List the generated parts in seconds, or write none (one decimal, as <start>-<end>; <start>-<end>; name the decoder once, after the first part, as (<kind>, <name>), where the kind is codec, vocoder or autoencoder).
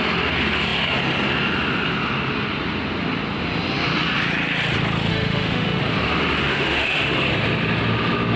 5.1-5.8 (autoencoder, DAC-VAE); 6.4-7.2